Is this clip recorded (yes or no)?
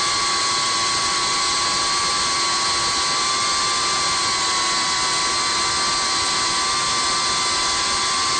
yes